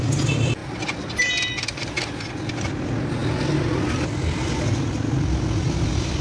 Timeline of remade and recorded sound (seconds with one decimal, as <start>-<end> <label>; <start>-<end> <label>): 0.0-6.2 recorded